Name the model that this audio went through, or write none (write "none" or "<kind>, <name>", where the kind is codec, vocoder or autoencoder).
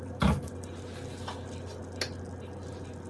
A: none